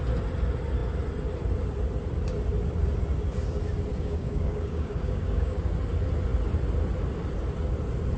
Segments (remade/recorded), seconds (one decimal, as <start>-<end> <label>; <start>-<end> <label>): 0.0-3.9 recorded; 3.9-5.6 remade; 5.6-8.2 recorded